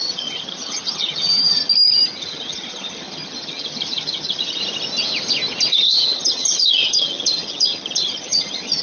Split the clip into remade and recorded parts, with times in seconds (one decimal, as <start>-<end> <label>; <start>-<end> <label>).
0.0-1.6 remade; 1.6-2.2 recorded; 2.2-4.6 remade; 4.6-5.7 recorded; 5.7-8.8 remade